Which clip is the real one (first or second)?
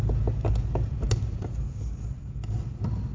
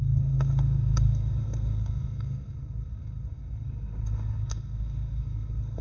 first